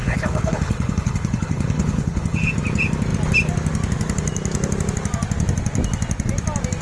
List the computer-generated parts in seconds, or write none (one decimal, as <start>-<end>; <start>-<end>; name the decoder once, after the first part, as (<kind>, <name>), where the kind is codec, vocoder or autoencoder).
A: 0.0-2.5 (codec, HILCodec)